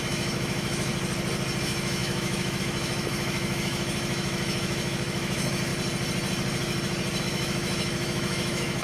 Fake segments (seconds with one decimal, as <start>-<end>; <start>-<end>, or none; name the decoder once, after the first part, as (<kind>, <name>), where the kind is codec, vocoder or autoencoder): 0.0-0.9 (autoencoder, DAC-VAE); 1.6-5.7; 7.2-8.8